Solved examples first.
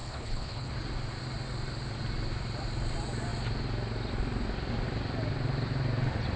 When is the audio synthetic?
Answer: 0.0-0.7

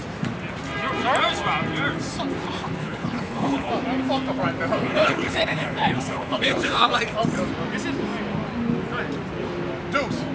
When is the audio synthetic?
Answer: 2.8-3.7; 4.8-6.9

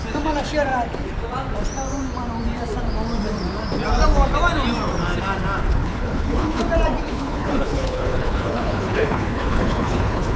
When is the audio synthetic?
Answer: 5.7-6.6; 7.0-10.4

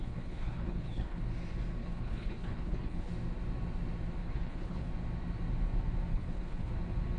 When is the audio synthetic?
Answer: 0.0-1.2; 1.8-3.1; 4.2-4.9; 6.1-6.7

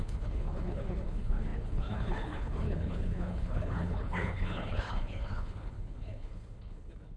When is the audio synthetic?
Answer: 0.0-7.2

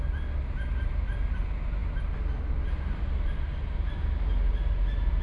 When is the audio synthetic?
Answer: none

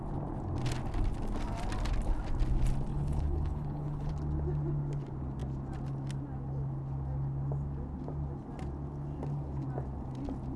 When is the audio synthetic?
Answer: 2.9-4.1

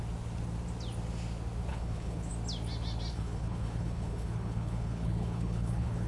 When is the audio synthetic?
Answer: 1.7-2.3; 3.1-6.1